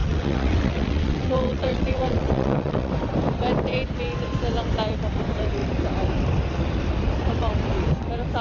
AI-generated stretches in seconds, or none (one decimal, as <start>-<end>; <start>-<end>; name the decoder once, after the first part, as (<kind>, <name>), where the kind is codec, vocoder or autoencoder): 0.0-2.9 (vocoder, WaveNeXt)